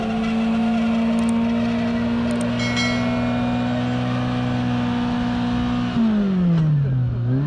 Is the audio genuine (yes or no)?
yes